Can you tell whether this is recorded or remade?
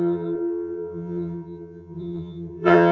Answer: remade